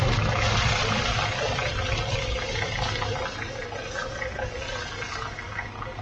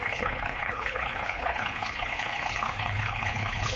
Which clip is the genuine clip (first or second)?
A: first